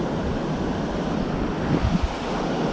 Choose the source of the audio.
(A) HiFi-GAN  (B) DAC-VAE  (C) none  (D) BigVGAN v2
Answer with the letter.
C